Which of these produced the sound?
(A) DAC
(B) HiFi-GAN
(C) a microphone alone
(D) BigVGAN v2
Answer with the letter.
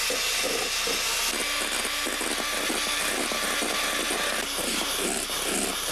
C